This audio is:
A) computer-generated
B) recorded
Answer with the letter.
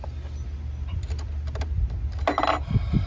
B